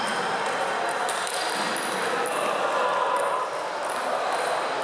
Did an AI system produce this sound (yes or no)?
no